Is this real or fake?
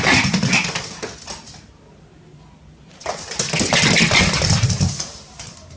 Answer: real